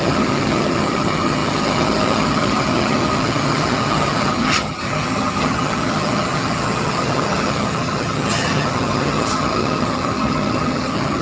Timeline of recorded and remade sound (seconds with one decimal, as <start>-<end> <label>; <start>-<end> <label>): 0.0-11.2 remade